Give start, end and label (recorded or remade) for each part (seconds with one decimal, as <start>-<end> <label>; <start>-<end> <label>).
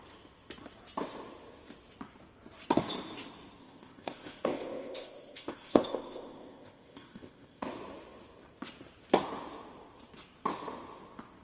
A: 0.0-3.6 recorded; 3.6-7.7 remade; 7.7-11.4 recorded